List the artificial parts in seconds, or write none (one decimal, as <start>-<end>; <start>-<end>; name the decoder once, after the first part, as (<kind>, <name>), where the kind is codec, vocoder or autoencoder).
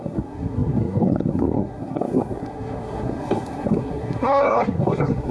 0.0-5.3 (codec, SNAC)